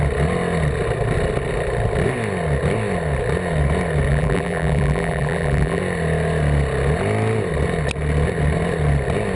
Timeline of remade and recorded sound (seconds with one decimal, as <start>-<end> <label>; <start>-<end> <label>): 0.0-4.1 recorded; 4.1-5.8 remade; 5.8-9.4 recorded